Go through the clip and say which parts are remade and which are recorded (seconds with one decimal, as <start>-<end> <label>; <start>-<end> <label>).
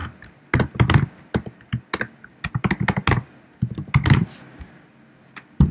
0.0-5.7 recorded